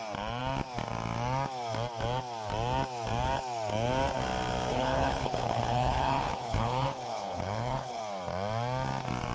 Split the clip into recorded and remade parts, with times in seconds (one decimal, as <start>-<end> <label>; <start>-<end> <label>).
0.0-4.7 recorded; 4.7-8.0 remade; 8.0-9.3 recorded